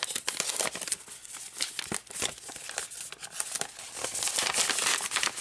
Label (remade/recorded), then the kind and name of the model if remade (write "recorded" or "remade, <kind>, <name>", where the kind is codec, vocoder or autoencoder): recorded